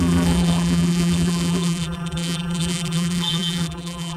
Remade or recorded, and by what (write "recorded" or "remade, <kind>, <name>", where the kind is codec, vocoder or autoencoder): remade, vocoder, BigVGAN v2